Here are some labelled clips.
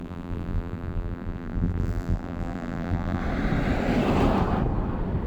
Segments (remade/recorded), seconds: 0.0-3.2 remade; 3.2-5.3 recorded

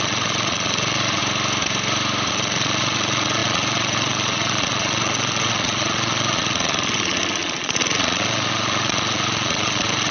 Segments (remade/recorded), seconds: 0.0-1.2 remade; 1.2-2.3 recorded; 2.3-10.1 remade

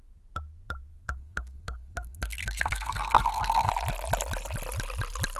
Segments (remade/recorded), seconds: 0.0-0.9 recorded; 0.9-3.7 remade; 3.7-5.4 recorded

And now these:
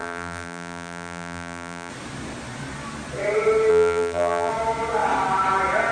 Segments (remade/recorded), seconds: 0.0-1.9 remade; 1.9-3.7 recorded; 3.7-4.5 remade; 4.5-5.9 recorded

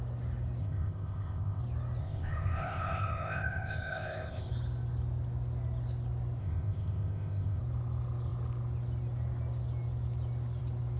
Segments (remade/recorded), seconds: 0.0-0.6 recorded; 0.6-1.6 remade; 1.6-2.0 recorded; 2.0-4.5 remade; 4.5-6.4 recorded; 6.4-7.6 remade; 7.6-11.0 recorded

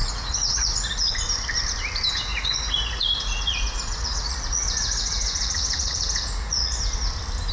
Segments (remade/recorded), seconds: 0.0-1.1 remade; 1.1-2.3 recorded; 2.3-6.8 remade; 6.8-7.5 recorded

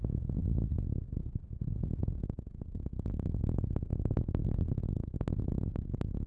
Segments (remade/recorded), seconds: 0.0-6.3 recorded

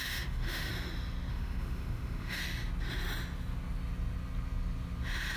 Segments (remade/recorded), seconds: 0.0-0.7 remade; 0.7-1.3 recorded; 1.3-2.4 remade; 2.4-5.4 recorded